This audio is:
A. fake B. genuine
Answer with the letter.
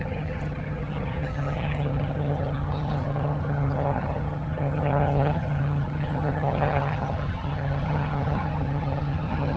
A